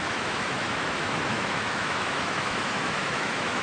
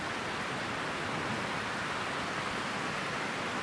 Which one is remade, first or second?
first